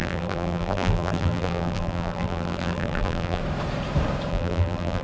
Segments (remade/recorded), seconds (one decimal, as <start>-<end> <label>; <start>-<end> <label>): 0.0-3.4 remade; 3.4-4.3 recorded; 4.3-5.0 remade